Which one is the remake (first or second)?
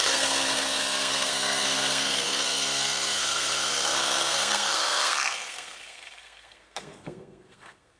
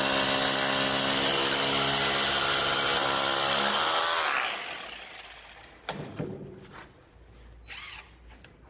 first